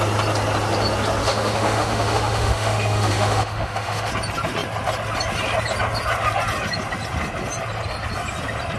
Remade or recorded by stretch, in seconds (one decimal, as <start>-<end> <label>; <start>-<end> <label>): 0.0-1.2 recorded; 1.2-4.1 remade; 4.1-8.8 recorded

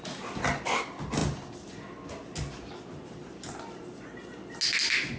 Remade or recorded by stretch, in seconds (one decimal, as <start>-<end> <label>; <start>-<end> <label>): 0.0-5.2 recorded

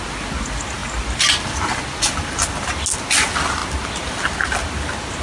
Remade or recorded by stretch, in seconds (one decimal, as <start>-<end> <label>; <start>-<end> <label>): 0.0-5.2 recorded

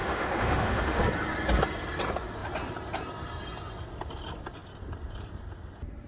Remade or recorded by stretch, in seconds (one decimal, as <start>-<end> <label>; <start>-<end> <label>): 0.0-1.0 remade; 1.0-6.1 recorded